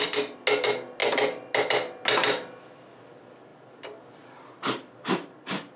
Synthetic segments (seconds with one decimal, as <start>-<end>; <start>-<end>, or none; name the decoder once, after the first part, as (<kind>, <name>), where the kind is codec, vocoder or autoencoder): none